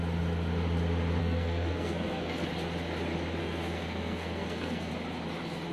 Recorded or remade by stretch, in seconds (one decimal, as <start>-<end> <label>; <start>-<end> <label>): 0.0-1.2 recorded; 1.2-2.5 remade; 2.5-3.4 recorded; 3.4-4.9 remade; 4.9-5.7 recorded